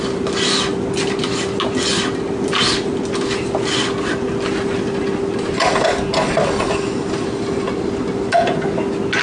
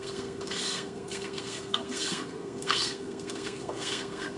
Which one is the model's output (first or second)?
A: second